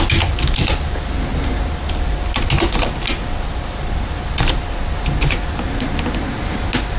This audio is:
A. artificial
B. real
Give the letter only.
B